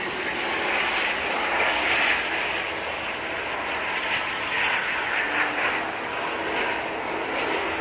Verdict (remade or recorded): recorded